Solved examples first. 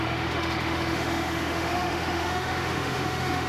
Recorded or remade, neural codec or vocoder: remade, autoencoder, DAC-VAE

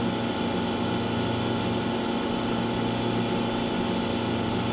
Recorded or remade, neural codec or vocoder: recorded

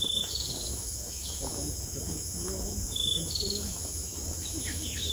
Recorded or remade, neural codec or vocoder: remade, autoencoder, DAC-VAE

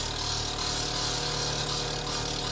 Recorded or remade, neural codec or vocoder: recorded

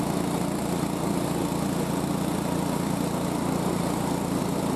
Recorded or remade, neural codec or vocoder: recorded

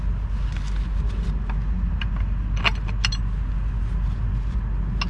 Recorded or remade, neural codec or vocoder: recorded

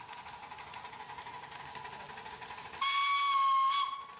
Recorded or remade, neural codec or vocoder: recorded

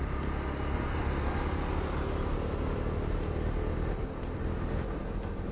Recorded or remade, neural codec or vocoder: recorded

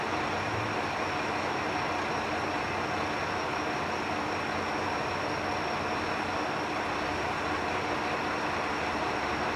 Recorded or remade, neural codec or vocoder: recorded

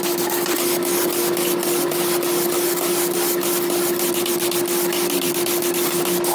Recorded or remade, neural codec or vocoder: recorded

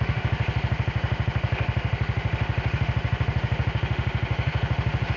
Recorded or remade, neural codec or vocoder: remade, autoencoder, DAC-VAE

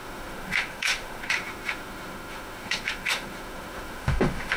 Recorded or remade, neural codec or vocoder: remade, autoencoder, DAC-VAE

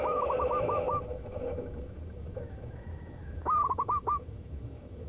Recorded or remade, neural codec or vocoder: remade, autoencoder, DAC-VAE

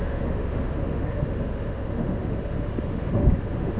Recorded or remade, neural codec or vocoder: remade, autoencoder, DAC-VAE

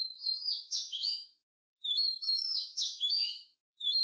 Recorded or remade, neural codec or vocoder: remade, autoencoder, DAC-VAE